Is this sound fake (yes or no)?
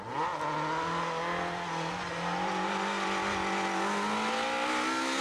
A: no